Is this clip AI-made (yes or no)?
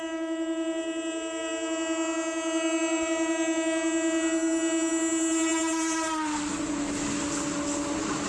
no